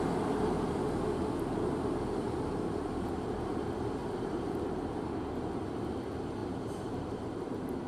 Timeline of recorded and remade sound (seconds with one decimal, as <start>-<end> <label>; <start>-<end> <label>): 0.0-4.0 recorded; 4.0-4.5 remade; 4.5-6.4 recorded; 6.4-7.9 remade